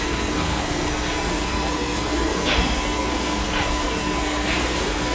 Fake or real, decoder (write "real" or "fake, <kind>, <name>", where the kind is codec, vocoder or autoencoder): fake, codec, SNAC